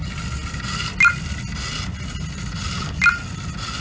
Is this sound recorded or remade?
recorded